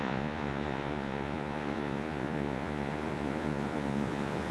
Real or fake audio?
fake